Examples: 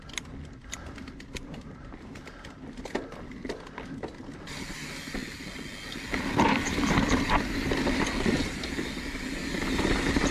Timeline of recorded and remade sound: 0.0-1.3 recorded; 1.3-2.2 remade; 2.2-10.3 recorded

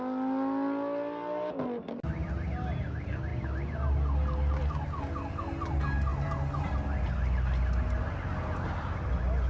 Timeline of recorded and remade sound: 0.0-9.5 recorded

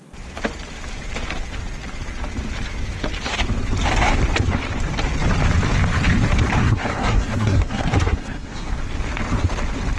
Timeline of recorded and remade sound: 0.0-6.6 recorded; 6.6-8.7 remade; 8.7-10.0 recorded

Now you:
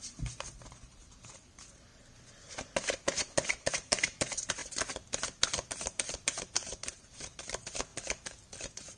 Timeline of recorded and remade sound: 0.0-1.9 remade; 1.9-3.7 recorded; 3.7-4.6 remade; 4.6-5.7 recorded; 5.7-7.9 remade; 7.9-8.6 recorded; 8.6-9.0 remade

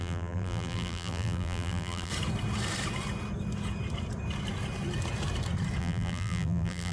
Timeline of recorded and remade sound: 0.0-2.1 remade; 2.1-5.8 recorded; 5.8-6.9 remade